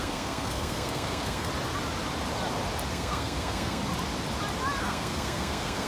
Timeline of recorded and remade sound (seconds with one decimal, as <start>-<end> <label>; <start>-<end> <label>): 0.0-1.5 remade; 1.5-2.9 recorded; 2.9-3.8 remade; 3.8-4.8 recorded; 4.8-5.9 remade